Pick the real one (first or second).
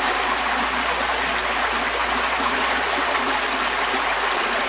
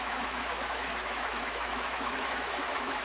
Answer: first